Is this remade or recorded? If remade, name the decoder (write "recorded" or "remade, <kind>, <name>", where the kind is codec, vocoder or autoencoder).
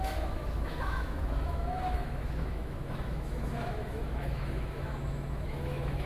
remade, autoencoder, DAC-VAE